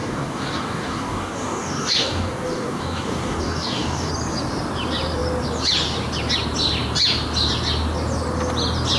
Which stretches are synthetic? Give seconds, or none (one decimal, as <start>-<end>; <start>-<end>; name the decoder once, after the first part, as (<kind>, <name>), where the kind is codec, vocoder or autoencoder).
0.0-4.1 (codec, DAC)